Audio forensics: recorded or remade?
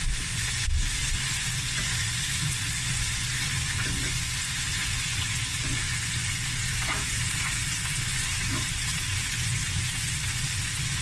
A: remade